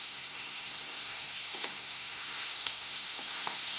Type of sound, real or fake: fake